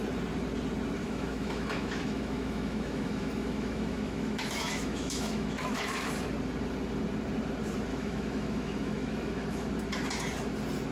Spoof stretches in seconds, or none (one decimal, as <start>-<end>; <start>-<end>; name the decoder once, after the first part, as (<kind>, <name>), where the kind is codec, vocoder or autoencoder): 1.0-6.1 (autoencoder, DAC-VAE); 7.9-9.7